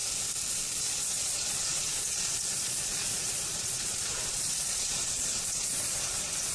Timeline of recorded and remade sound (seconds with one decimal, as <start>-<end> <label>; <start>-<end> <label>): 0.0-0.8 recorded; 0.8-6.5 remade